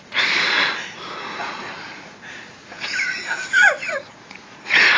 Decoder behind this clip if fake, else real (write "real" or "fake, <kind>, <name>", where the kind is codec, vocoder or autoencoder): fake, vocoder, Vocos